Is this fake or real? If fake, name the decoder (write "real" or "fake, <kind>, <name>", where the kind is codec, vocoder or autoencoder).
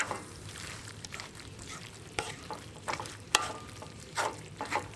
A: fake, vocoder, BigVGAN v2